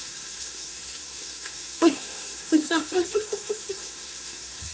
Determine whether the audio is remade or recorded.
remade